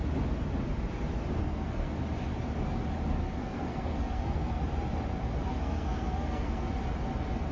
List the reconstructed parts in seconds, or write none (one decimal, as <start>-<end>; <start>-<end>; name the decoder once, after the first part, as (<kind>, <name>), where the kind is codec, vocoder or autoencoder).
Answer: 1.4-1.9 (codec, SNAC); 3.2-4.6; 5.5-6.7